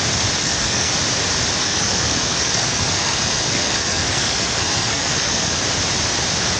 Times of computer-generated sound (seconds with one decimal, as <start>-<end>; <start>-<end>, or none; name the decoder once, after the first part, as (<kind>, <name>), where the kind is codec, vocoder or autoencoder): 0.4-0.9 (codec, SNAC); 1.6-5.6